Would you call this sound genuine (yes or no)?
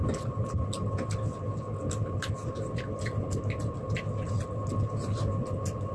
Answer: yes